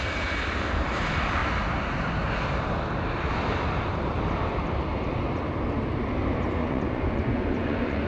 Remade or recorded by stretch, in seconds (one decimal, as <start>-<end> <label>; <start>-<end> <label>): 0.0-6.6 recorded; 6.6-8.1 remade